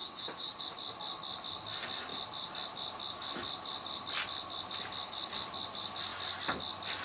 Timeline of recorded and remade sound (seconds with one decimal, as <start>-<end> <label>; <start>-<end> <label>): 0.0-0.6 remade; 0.6-7.0 recorded